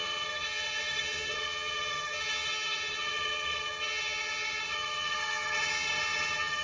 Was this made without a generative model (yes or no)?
no